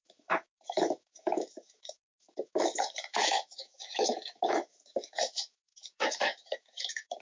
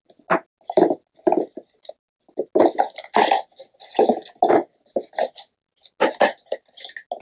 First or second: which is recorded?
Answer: second